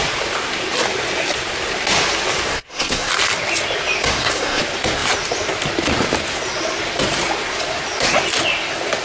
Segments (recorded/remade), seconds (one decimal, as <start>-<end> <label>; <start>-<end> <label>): 0.0-2.5 recorded; 2.5-3.1 remade; 3.1-4.1 recorded; 4.1-4.6 remade; 4.6-9.0 recorded